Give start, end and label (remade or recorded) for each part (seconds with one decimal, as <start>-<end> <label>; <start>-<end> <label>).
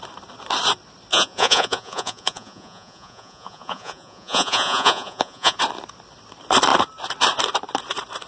0.0-1.1 recorded; 1.1-5.6 remade; 5.6-8.3 recorded